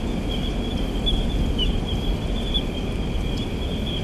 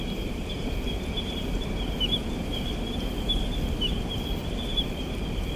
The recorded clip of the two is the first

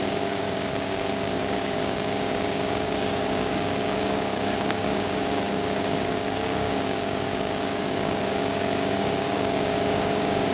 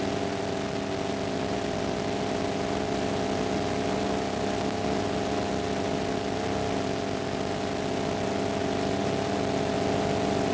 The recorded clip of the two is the second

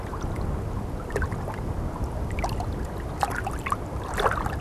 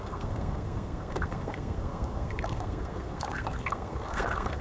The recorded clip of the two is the first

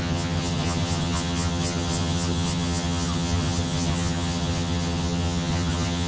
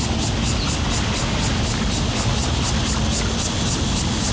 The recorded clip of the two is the second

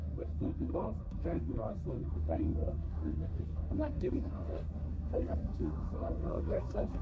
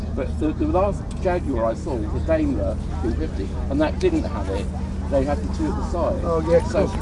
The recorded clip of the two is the second